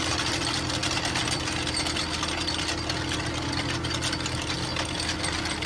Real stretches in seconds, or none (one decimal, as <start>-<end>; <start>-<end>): 0.0-5.7